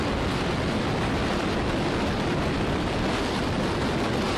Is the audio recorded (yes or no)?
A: yes